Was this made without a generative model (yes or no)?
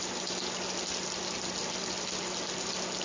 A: yes